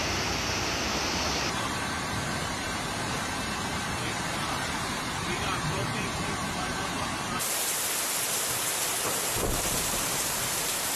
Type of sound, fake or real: fake